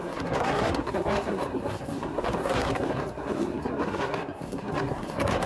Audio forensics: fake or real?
fake